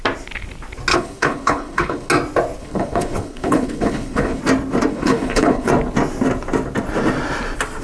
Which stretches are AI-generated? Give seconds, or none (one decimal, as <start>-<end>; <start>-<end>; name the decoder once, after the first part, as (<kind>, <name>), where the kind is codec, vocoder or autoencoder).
0.9-2.1 (codec, HILCodec); 2.6-4.4; 4.9-5.7